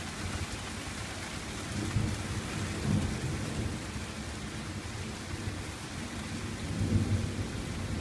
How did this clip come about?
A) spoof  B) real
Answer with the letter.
B